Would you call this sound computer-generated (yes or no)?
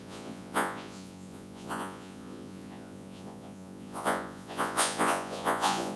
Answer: yes